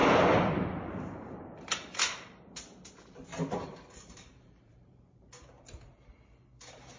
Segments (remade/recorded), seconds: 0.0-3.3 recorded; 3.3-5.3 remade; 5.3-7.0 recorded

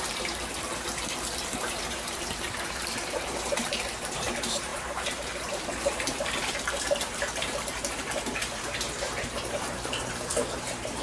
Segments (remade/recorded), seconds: 0.0-11.0 remade